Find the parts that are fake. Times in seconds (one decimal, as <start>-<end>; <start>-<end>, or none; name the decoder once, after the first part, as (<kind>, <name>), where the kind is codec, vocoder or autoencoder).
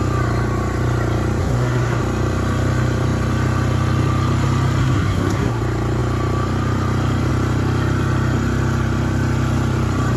1.4-2.0 (codec, SNAC); 4.8-5.6